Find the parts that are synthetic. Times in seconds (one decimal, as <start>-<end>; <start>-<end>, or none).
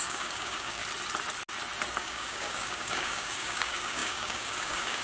0.0-0.8; 2.0-5.0